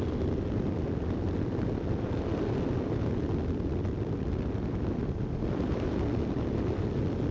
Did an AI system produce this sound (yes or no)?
no